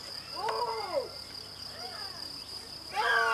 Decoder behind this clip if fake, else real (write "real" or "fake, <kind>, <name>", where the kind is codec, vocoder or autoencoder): real